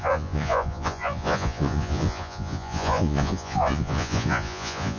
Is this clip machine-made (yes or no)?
yes